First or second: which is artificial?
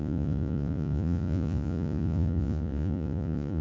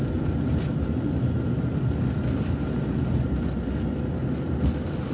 first